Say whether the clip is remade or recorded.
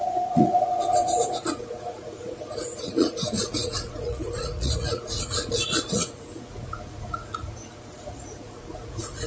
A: remade